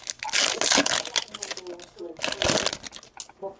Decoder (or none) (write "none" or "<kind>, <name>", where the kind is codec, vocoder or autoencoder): none